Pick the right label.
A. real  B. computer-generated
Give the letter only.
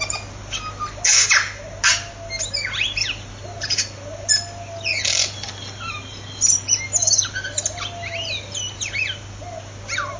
A